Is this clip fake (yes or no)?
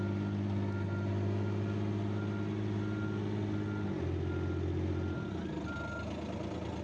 no